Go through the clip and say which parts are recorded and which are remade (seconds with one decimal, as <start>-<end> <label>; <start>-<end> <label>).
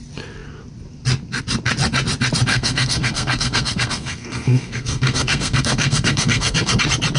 0.0-2.5 recorded; 2.5-6.8 remade; 6.8-7.2 recorded